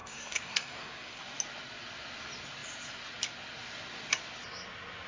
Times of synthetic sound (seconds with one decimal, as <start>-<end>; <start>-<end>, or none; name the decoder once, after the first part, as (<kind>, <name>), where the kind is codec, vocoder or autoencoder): 0.0-1.2 (codec, SNAC)